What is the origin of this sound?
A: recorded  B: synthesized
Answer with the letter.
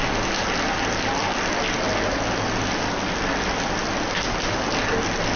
A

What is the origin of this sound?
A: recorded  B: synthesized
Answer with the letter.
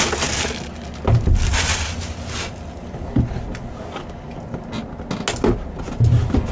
A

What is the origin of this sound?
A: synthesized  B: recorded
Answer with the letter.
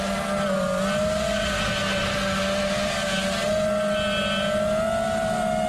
B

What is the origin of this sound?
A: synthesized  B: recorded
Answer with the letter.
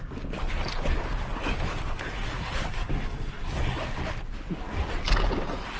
B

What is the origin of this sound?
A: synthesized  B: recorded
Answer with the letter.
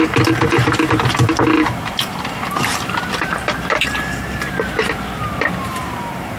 A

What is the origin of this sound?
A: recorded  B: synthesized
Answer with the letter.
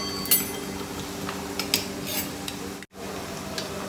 A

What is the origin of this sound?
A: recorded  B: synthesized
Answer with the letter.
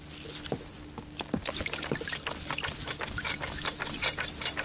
A